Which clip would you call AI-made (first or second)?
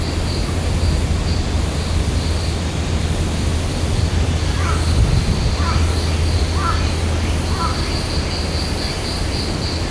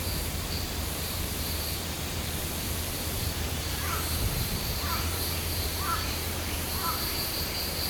second